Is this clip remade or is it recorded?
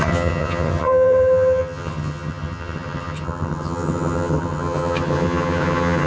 remade